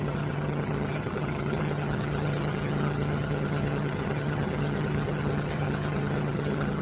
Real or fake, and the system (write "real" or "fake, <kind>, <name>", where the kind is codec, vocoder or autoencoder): fake, vocoder, HiFi-GAN